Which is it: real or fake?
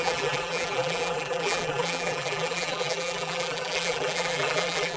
fake